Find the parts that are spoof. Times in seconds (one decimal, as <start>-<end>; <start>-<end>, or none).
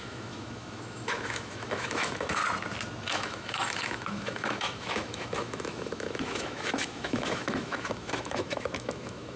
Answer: 0.0-2.4; 3.1-9.4